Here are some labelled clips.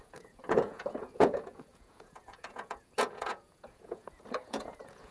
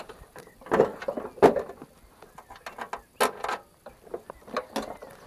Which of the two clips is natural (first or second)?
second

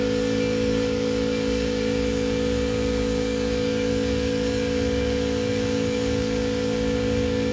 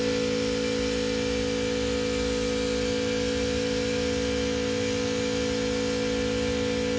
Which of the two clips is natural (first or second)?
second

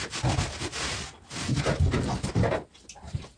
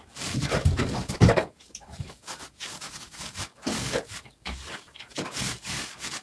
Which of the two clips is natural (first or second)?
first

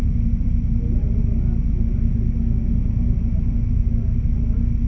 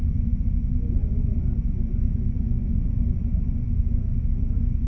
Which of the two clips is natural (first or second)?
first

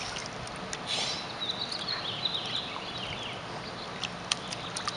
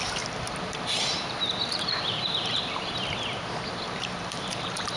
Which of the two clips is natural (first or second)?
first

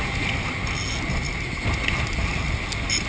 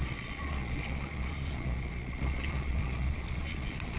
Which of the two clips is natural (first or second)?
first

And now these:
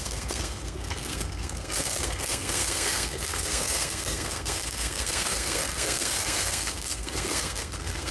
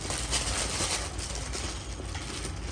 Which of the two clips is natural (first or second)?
second